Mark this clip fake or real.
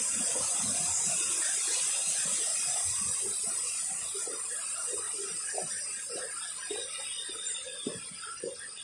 real